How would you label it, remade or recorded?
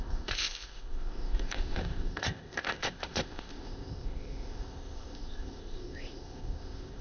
remade